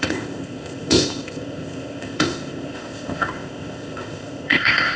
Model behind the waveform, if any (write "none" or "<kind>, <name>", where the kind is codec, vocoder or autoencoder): codec, ZipCodec